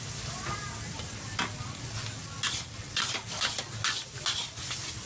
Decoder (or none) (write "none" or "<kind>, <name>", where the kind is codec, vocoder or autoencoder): none